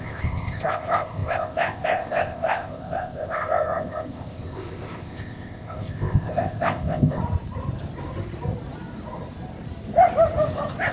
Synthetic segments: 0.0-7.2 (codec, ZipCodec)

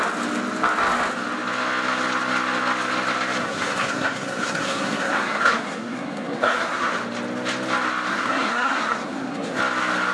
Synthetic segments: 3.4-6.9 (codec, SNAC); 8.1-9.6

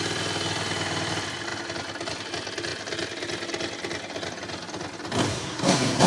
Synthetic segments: 5.3-6.1 (codec, SNAC)

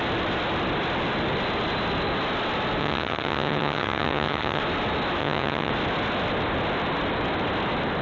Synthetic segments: 2.8-4.6 (vocoder, HiFi-GAN); 5.2-5.7

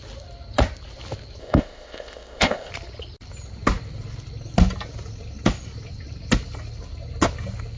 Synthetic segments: 1.4-2.7 (codec, ZipCodec)

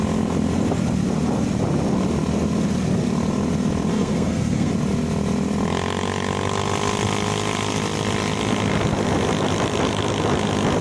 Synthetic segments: 3.9-4.7 (codec, SNAC)

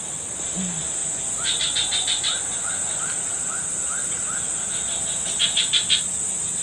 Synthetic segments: 1.0-3.0 (vocoder, Vocos)